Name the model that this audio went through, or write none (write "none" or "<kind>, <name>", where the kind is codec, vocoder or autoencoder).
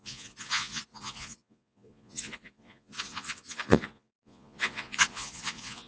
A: vocoder, Vocos